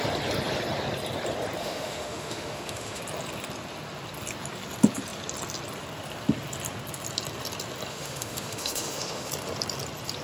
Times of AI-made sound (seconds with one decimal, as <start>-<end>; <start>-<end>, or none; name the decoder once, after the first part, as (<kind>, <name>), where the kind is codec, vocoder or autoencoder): 1.6-3.0 (autoencoder, DAC-VAE); 7.9-9.3